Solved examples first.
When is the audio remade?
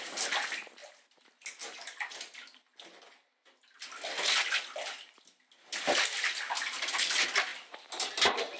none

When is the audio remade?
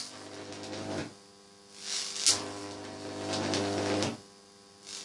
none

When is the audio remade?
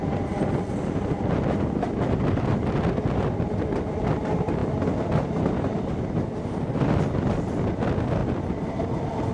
none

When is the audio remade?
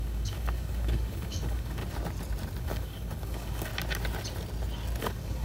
0.0-1.8 (codec, DAC); 2.6-3.7; 5.0-5.4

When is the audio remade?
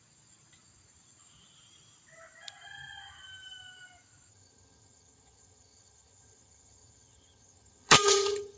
4.3-8.6 (vocoder, HiFi-GAN)